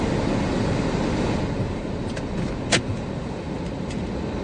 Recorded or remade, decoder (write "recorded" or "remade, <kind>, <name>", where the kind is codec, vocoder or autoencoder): recorded